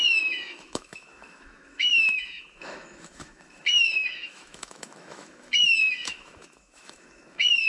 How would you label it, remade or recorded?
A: remade